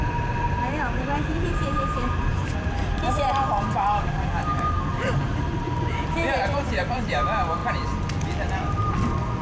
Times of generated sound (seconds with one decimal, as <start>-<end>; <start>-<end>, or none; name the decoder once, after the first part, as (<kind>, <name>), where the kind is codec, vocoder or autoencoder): 0.0-7.6 (vocoder, BigVGAN v2); 8.7-9.4